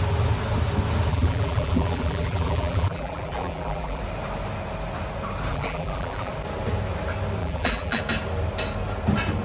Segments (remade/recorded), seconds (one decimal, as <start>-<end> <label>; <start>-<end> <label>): 0.0-1.1 recorded; 1.1-4.0 remade; 4.0-5.5 recorded; 5.5-6.3 remade; 6.3-7.4 recorded; 7.4-8.0 remade; 8.0-9.4 recorded